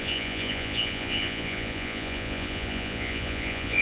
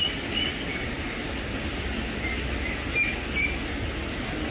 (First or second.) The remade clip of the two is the first